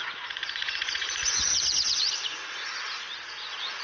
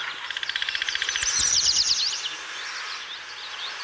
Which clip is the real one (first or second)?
second